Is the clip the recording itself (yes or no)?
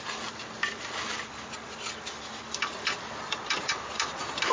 yes